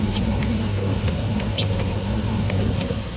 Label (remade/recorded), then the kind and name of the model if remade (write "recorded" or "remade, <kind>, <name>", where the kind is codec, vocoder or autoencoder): remade, codec, SNAC